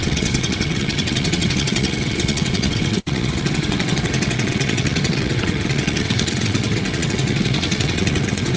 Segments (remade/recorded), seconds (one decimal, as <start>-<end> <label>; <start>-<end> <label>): 0.0-8.6 remade